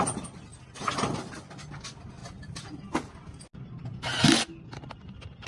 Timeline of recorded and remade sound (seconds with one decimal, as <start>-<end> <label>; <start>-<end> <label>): 0.0-5.5 recorded